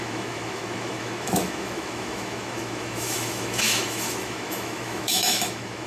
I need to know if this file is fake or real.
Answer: fake